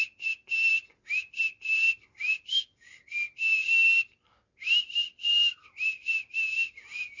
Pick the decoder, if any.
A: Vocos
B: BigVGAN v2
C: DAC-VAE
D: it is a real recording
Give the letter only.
D